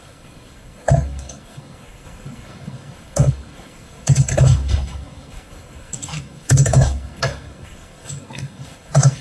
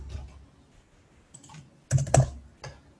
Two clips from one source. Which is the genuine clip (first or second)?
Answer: second